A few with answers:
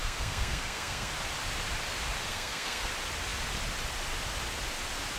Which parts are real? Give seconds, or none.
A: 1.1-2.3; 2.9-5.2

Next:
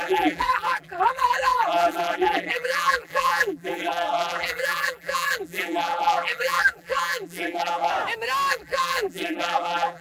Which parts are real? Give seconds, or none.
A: 7.9-8.5

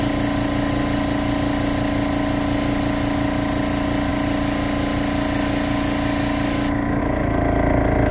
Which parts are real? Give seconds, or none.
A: 0.0-8.1

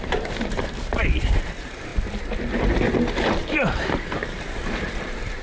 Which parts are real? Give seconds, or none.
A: 1.9-3.2

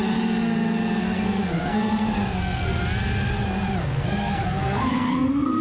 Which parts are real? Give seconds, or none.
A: 0.0-1.0; 2.8-3.8

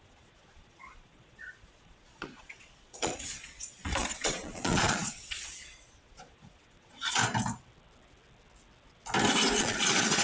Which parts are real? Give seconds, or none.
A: 7.2-9.6

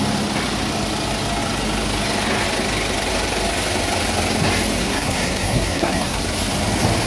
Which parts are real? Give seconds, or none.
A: 0.0-4.8; 6.2-7.1